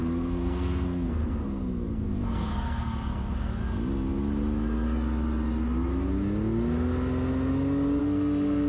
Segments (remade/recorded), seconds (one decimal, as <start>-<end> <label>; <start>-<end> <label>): 0.0-3.6 remade; 3.6-8.0 recorded; 8.0-8.7 remade